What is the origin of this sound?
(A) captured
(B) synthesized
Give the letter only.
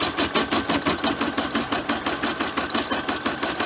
A